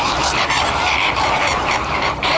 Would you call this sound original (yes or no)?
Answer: no